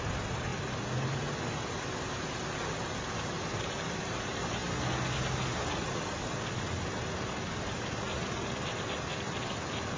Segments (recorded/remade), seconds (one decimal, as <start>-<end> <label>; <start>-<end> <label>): 0.0-0.5 remade; 0.5-2.1 recorded; 2.1-4.6 remade; 4.6-10.0 recorded